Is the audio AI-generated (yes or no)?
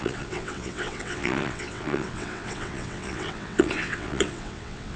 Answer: yes